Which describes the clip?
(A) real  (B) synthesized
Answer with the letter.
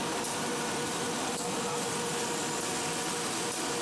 A